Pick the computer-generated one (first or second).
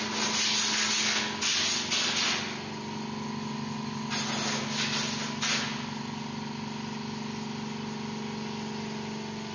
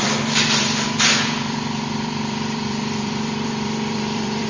second